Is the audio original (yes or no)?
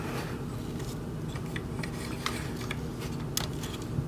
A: yes